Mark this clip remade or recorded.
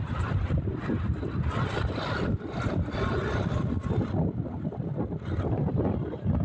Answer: recorded